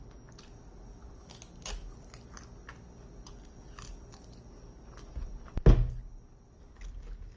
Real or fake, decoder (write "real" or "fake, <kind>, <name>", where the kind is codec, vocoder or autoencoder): real